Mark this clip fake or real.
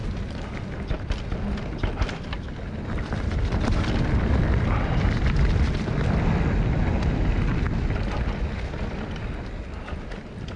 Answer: real